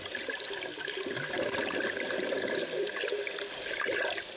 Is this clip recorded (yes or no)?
yes